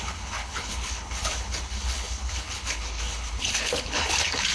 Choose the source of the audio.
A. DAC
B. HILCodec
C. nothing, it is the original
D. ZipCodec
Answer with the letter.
B